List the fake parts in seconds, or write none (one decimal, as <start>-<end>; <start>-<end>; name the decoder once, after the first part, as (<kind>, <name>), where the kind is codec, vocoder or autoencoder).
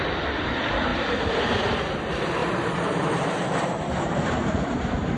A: 0.9-1.8 (vocoder, BigVGAN v2); 2.4-4.8